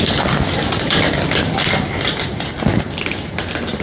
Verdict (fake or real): real